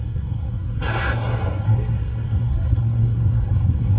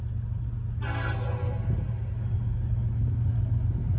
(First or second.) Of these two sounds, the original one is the second